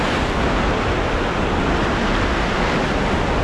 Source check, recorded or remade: recorded